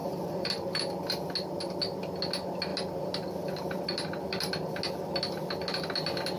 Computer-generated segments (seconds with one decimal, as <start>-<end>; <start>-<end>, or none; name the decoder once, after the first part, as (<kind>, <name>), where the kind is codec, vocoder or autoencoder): 0.0-0.5 (vocoder, BigVGAN v2)